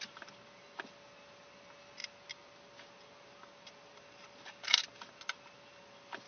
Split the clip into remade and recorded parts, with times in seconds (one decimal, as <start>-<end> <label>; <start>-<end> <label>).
0.0-6.3 recorded